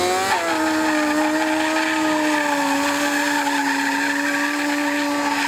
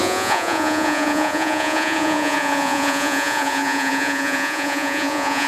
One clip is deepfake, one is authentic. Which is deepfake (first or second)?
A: second